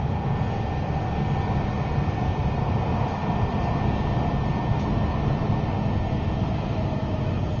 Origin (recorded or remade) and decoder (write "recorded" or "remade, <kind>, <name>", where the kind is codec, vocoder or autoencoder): recorded